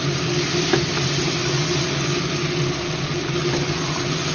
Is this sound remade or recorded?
recorded